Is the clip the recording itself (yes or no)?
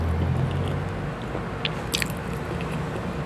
yes